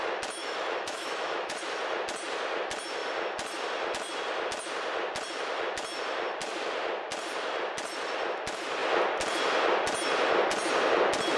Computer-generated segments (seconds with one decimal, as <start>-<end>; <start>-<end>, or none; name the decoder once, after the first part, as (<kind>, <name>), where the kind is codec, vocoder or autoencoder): 0.4-1.6 (autoencoder, DAC-VAE)